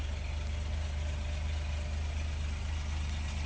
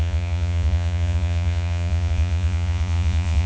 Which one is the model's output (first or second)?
second